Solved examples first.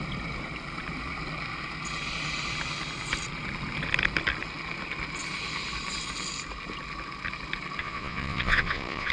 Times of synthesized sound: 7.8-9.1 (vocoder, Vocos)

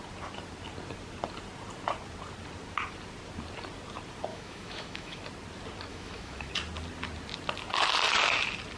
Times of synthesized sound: 4.3-5.2 (autoencoder, DAC-VAE); 5.9-6.5